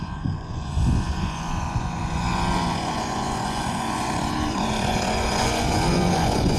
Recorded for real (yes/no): no